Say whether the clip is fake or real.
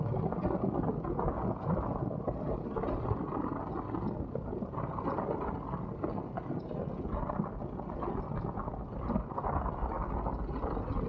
real